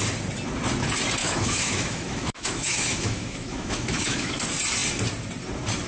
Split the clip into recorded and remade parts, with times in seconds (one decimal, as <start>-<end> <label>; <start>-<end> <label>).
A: 0.0-1.2 recorded; 1.2-4.3 remade; 4.3-5.9 recorded